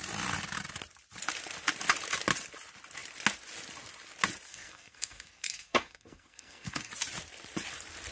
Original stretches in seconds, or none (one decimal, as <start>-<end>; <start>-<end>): 0.0-4.5; 6.9-8.1